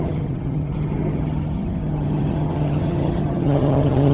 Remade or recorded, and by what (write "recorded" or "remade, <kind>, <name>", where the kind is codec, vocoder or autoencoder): remade, vocoder, HiFi-GAN